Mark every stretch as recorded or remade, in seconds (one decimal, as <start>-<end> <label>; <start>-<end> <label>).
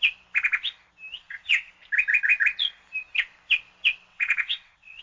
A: 0.0-1.2 recorded; 1.2-1.7 remade; 1.7-4.1 recorded; 4.1-5.0 remade